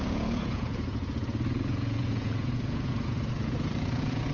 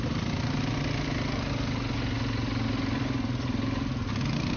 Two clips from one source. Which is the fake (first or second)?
first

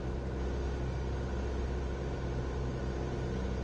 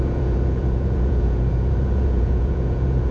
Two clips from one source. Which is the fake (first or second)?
second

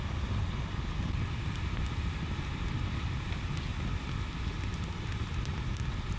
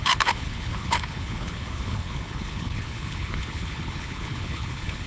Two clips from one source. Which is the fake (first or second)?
second